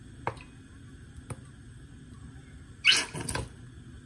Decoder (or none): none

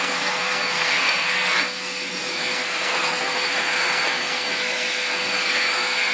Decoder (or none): codec, SNAC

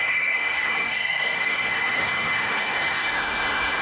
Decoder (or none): codec, SNAC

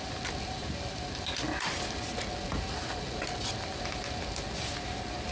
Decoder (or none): none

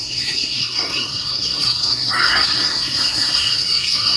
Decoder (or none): codec, SNAC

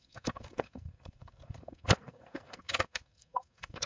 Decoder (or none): codec, SNAC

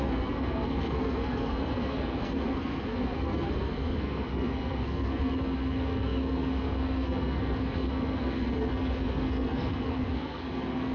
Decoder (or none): codec, SNAC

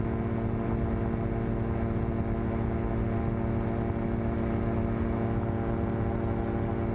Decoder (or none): none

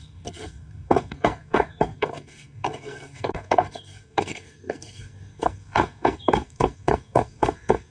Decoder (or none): codec, SNAC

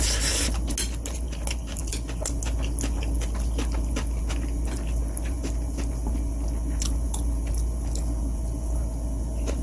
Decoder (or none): none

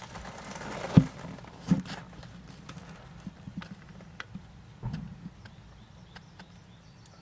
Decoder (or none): none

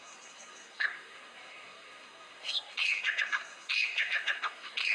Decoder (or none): codec, SNAC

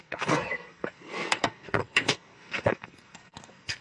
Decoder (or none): codec, SNAC